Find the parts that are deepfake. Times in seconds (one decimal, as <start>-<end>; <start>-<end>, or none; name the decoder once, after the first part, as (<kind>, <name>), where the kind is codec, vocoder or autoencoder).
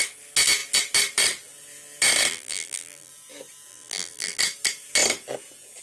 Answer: 2.3-3.1 (vocoder, BigVGAN v2); 3.7-4.4